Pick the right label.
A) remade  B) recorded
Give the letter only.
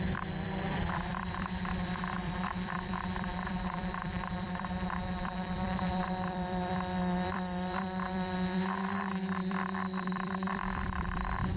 A